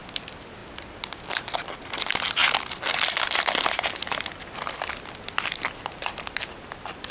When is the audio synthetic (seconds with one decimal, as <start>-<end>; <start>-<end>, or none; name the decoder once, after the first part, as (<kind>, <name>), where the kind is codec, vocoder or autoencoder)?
none